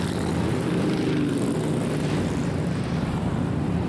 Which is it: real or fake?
real